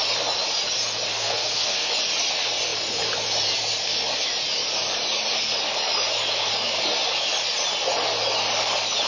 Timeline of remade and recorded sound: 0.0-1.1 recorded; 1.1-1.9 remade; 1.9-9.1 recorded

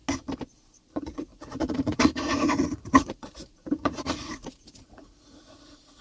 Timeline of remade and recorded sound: 0.0-0.9 recorded; 0.9-6.0 remade

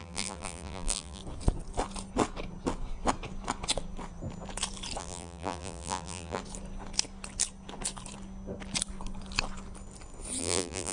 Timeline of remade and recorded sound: 0.0-1.2 remade; 1.2-5.0 recorded; 5.0-6.4 remade; 6.4-10.4 recorded; 10.4-10.9 remade

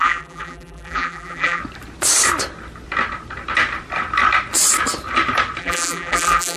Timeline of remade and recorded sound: 0.0-1.6 remade; 1.6-5.6 recorded; 5.6-6.6 remade